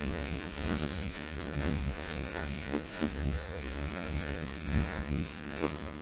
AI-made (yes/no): yes